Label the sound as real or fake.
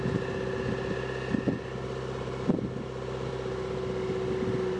real